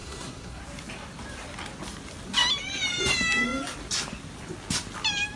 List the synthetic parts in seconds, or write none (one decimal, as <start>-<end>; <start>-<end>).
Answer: 0.0-0.6